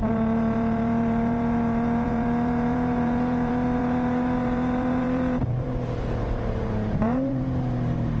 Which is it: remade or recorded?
remade